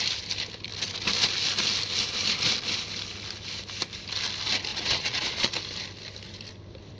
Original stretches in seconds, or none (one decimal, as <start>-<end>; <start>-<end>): 0.0-4.7; 5.5-7.0